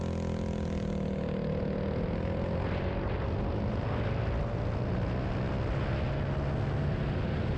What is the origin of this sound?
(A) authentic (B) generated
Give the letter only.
A